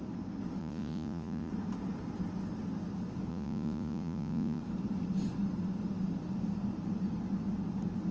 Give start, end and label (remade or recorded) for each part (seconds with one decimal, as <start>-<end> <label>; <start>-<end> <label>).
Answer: 0.0-0.6 recorded; 0.6-1.5 remade; 1.5-3.3 recorded; 3.3-4.6 remade; 4.6-8.1 recorded